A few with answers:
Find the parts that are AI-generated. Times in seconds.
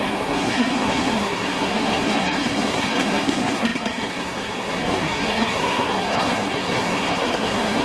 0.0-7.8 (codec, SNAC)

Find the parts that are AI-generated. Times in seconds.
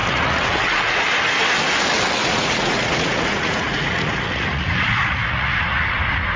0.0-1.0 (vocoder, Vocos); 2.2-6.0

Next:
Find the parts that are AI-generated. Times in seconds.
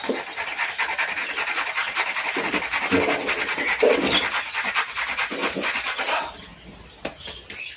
none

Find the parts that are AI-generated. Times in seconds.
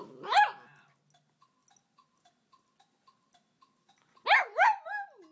none